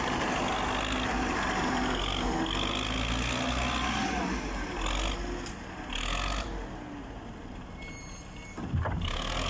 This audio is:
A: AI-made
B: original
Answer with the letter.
B